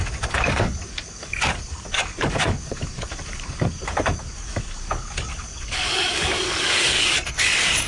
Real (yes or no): no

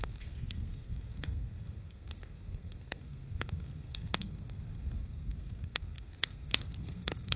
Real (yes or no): no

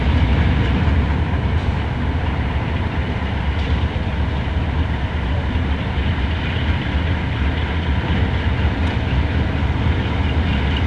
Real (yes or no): yes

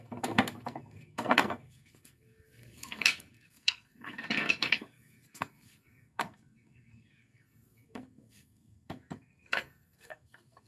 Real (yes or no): no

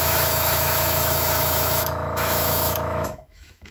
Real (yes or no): no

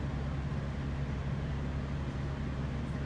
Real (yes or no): yes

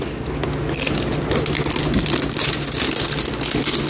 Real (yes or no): yes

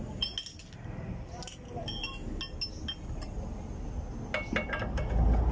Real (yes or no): yes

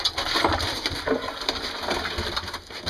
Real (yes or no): yes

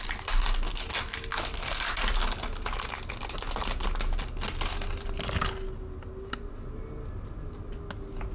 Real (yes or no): yes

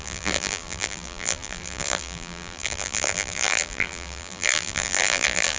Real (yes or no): no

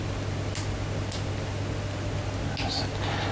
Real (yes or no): yes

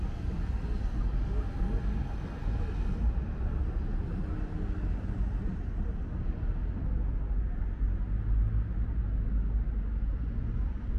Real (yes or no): yes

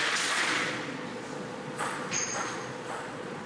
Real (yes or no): no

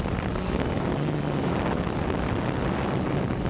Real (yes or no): yes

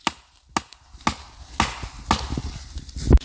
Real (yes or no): yes